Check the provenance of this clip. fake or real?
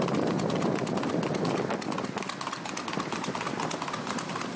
real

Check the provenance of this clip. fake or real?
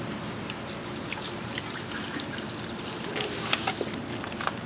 real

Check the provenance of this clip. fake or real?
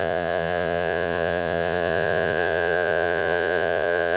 fake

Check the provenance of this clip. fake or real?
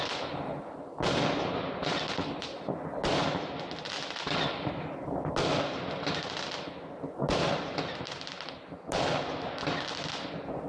real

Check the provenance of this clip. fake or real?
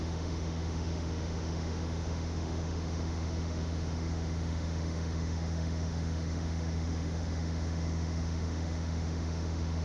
fake